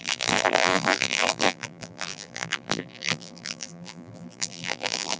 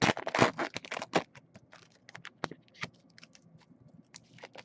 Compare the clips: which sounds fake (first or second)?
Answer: first